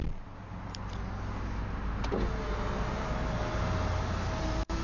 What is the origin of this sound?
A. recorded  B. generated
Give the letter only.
A